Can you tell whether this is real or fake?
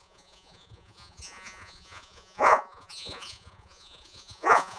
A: fake